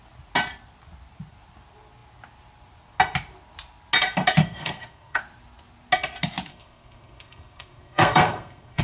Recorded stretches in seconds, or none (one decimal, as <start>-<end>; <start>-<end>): 0.0-4.4; 5.2-6.5